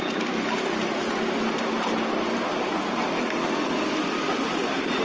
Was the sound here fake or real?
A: real